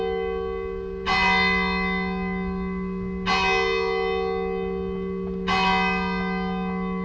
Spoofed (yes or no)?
no